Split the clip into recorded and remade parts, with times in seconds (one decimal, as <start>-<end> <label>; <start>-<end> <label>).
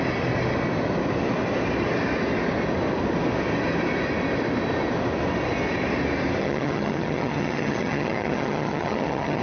0.0-6.4 recorded; 6.4-9.4 remade